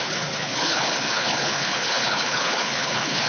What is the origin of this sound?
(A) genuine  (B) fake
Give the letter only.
B